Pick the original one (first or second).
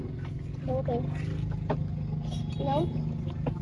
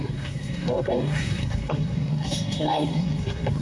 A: first